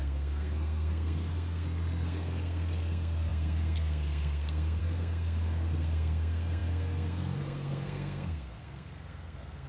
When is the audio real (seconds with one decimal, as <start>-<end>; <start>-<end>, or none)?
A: none